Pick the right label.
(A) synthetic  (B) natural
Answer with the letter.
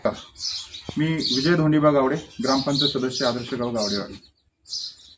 B